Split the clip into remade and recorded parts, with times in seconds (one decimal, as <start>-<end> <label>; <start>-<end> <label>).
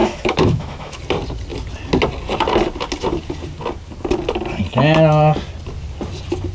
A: 0.0-1.0 remade; 1.0-6.5 recorded